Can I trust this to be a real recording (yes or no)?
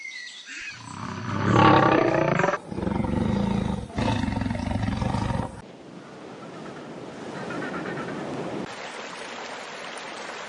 yes